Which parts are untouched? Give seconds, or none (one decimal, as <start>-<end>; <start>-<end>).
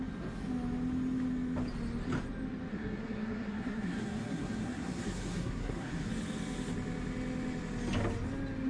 0.0-2.7; 6.1-8.7